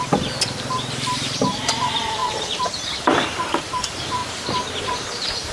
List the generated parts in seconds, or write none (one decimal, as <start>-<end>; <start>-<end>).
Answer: 0.0-4.2; 4.8-5.5